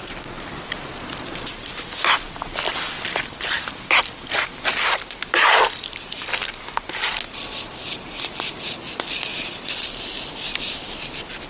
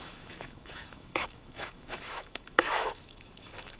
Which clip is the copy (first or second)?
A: second